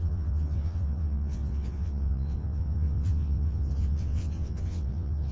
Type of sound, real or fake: fake